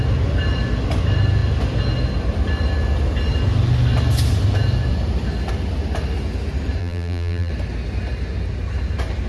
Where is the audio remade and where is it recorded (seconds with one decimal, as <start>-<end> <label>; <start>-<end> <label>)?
0.0-6.8 recorded; 6.8-7.5 remade; 7.5-9.3 recorded